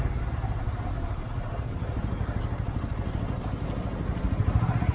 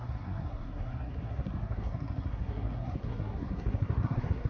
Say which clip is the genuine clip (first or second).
first